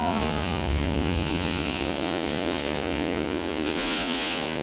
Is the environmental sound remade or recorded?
remade